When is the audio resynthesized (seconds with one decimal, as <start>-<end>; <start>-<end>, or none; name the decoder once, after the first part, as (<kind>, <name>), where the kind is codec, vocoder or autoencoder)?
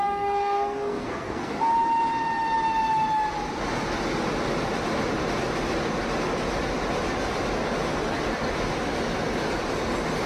0.0-1.7 (codec, SNAC)